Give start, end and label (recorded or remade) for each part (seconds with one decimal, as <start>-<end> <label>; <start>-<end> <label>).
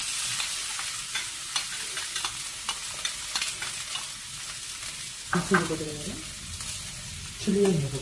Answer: 0.0-8.0 recorded